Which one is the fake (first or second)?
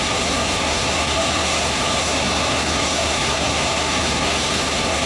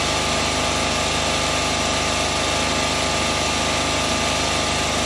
first